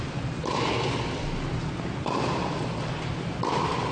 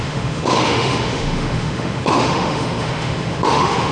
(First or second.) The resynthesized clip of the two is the second